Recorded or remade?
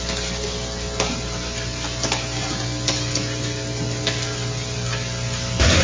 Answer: recorded